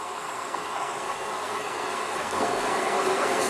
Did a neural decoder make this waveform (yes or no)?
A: yes